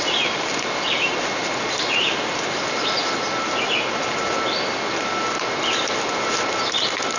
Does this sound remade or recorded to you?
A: recorded